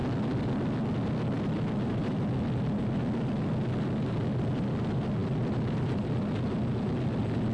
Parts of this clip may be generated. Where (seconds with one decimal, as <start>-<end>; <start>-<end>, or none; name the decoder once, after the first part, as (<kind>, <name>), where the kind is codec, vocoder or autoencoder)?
none